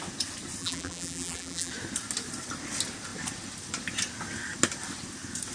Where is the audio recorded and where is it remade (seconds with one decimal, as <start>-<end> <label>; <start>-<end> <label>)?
0.0-0.6 recorded; 0.6-1.7 remade; 1.7-5.5 recorded